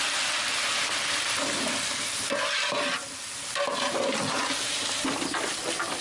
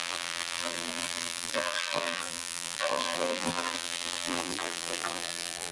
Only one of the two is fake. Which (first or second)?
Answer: second